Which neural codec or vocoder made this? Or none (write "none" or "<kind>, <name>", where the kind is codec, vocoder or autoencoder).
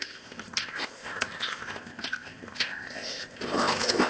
codec, ZipCodec